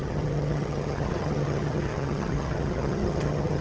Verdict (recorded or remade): remade